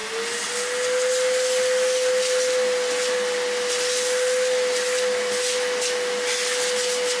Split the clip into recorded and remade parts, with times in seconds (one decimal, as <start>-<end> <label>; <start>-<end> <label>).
0.0-7.2 recorded